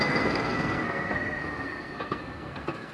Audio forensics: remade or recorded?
remade